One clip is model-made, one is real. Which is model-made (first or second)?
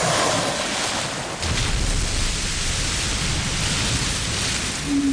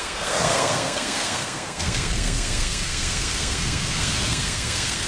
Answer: second